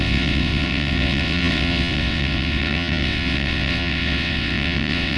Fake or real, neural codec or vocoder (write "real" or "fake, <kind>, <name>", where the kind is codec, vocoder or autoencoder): fake, vocoder, WaveNeXt